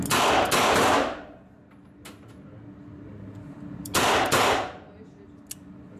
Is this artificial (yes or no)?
no